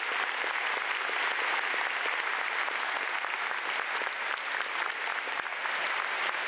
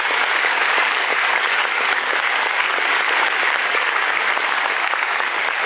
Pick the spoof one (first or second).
second